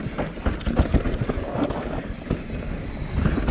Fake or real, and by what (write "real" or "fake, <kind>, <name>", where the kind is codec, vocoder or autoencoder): real